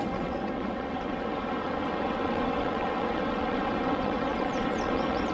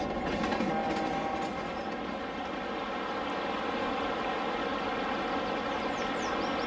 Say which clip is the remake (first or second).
first